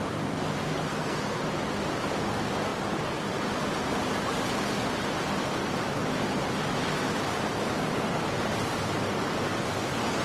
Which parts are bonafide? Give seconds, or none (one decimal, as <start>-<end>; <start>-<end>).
0.0-0.9; 1.4-10.2